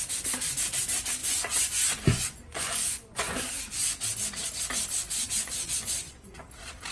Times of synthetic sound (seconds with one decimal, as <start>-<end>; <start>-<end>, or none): 1.2-3.5; 5.0-6.4